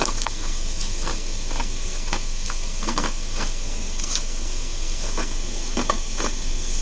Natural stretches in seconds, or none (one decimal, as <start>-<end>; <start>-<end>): none